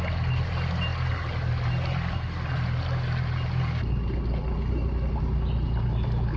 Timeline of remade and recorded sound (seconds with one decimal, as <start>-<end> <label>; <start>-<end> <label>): 0.0-6.4 recorded